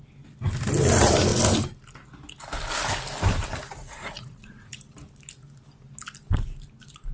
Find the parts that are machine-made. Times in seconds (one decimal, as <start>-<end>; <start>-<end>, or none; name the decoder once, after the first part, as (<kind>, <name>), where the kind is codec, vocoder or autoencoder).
3.8-4.7 (vocoder, Vocos)